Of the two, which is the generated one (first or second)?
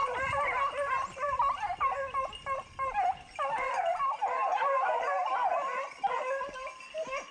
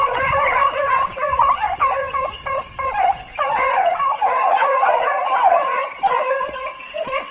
second